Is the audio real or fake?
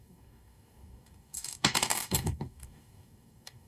fake